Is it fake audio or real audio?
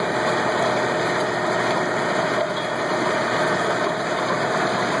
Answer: real